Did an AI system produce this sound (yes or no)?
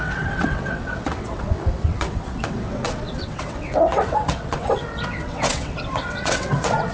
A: yes